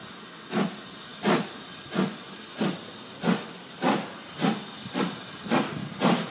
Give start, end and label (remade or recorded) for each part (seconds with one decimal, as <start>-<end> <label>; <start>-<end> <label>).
0.0-6.3 recorded